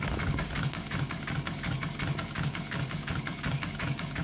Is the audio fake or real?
fake